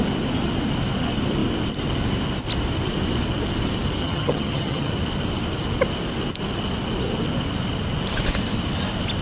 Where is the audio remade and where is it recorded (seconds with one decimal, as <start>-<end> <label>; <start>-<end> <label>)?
0.0-4.0 recorded; 4.0-4.9 remade; 4.9-9.2 recorded

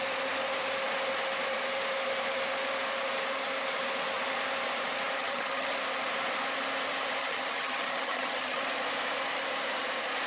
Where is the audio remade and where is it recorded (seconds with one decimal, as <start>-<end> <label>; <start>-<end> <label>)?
0.0-5.2 recorded; 5.2-5.7 remade; 5.7-7.2 recorded; 7.2-8.6 remade; 8.6-10.3 recorded